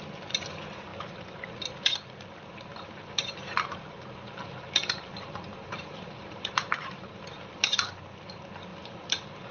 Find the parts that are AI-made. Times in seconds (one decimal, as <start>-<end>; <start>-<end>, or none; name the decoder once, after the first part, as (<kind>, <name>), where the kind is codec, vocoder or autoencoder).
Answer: 0.9-1.9 (vocoder, BigVGAN v2); 2.7-7.6; 8.7-9.5